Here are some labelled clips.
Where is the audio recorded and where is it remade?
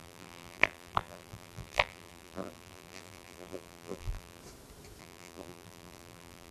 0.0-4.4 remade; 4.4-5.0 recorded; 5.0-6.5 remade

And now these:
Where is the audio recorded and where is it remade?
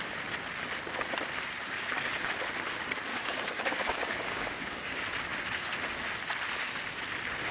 0.0-3.1 recorded; 3.1-5.0 remade; 5.0-7.5 recorded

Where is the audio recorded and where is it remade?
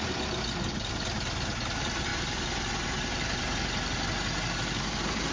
0.0-5.3 recorded